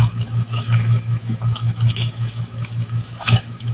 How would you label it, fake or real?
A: fake